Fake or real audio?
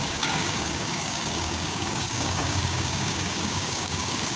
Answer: fake